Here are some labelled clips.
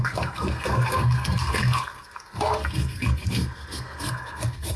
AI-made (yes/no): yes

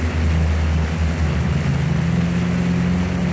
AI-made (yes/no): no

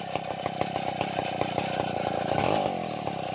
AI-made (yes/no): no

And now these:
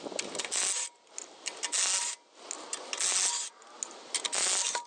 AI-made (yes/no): no